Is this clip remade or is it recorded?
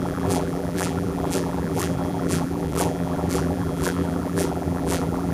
remade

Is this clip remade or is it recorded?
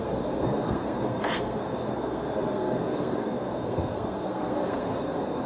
remade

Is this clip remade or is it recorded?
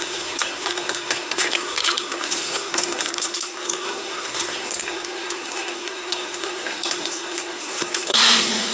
remade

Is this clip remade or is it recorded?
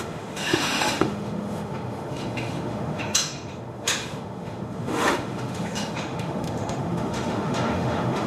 remade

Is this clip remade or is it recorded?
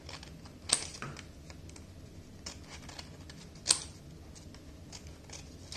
recorded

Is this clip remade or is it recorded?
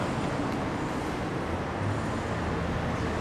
recorded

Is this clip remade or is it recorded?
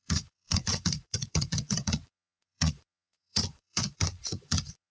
remade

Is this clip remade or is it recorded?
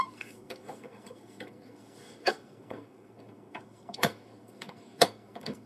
remade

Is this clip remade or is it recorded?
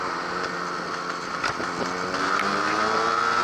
recorded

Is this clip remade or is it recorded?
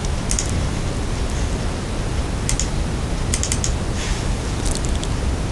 recorded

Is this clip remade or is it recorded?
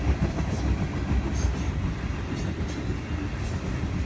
recorded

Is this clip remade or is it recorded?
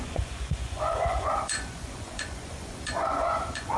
remade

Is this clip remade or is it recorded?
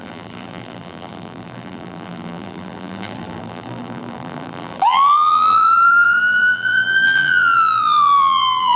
remade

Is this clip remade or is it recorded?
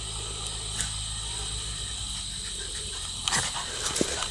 recorded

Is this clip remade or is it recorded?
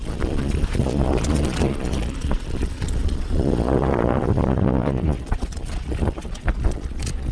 remade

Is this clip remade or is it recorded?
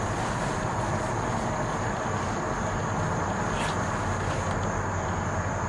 recorded